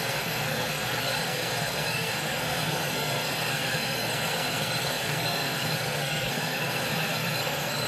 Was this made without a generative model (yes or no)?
no